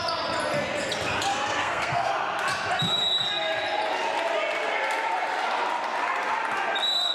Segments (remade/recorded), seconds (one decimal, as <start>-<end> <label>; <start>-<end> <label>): 0.0-1.3 recorded; 1.3-2.1 remade; 2.1-7.1 recorded